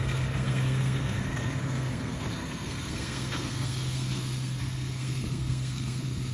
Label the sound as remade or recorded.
remade